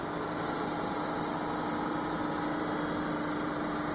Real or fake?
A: real